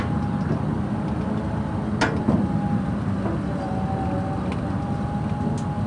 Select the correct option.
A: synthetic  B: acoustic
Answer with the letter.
B